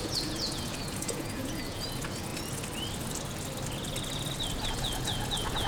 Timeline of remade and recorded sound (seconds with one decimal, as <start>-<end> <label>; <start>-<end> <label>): 0.0-2.3 remade; 2.3-4.7 recorded; 4.7-5.7 remade